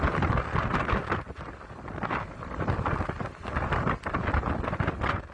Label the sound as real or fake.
real